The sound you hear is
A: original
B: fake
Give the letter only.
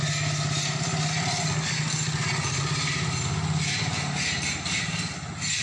A